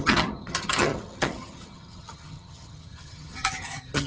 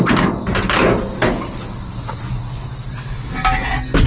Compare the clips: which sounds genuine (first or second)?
second